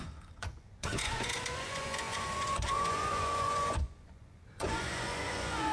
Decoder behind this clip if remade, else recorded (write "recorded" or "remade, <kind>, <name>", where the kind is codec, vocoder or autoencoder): remade, vocoder, Vocos